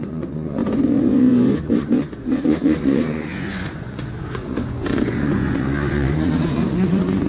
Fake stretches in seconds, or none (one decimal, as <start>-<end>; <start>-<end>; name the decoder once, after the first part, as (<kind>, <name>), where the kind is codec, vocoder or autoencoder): 0.0-7.3 (vocoder, Vocos)